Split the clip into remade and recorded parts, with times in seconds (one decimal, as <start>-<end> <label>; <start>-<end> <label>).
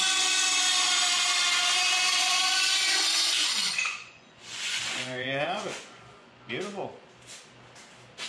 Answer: 0.0-2.1 recorded; 2.1-6.5 remade; 6.5-8.3 recorded